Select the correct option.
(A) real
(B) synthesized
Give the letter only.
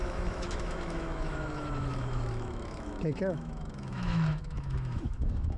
B